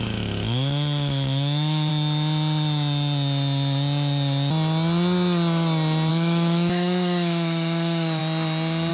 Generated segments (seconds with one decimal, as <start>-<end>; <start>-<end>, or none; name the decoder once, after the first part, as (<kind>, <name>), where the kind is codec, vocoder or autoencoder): 0.0-1.9 (autoencoder, DAC-VAE); 6.1-8.2